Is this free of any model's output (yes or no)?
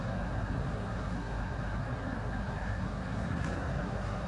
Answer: no